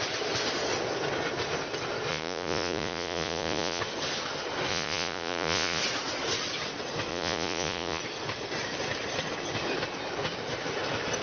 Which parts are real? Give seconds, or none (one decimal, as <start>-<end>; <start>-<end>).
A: 0.0-2.1; 3.8-4.7; 5.8-7.1; 8.0-11.2